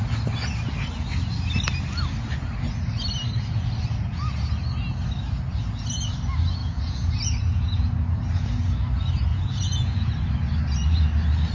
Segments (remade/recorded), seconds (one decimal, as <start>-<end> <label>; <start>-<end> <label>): 0.0-6.6 recorded; 6.6-7.9 remade; 7.9-9.3 recorded; 9.3-10.1 remade; 10.1-11.5 recorded